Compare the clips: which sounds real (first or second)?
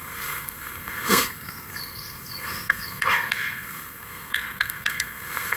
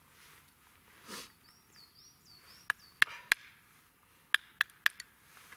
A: second